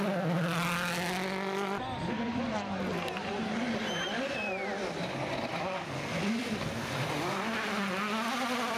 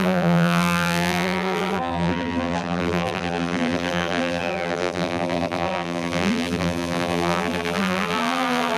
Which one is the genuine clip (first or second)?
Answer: first